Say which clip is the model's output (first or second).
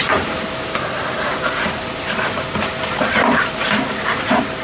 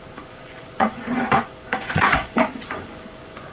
second